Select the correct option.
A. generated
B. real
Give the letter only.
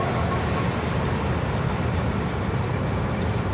B